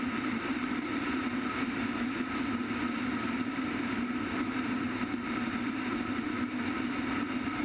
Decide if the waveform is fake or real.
fake